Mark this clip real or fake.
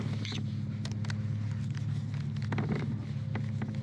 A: real